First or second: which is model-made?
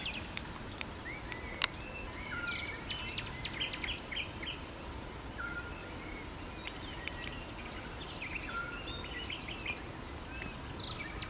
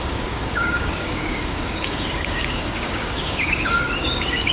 second